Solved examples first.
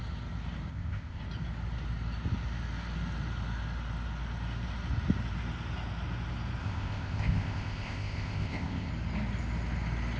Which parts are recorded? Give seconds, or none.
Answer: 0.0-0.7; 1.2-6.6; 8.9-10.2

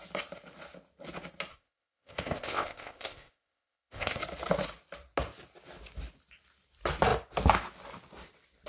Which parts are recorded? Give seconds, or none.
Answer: 0.0-1.5; 4.2-8.7

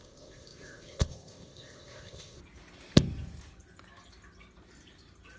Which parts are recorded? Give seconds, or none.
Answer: 2.4-5.4

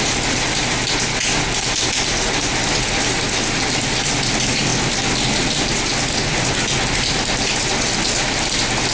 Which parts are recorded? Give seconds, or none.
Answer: 0.0-8.9

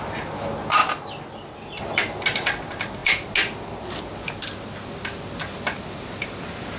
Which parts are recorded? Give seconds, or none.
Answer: 0.0-6.8

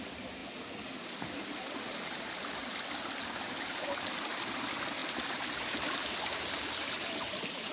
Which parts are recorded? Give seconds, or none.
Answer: 0.0-7.7

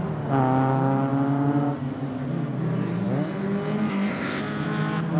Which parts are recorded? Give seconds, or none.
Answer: 0.0-3.9; 4.4-5.2